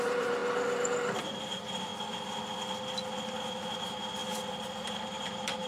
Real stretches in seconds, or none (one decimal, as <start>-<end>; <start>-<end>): 0.4-1.4; 1.9-3.8; 4.2-5.0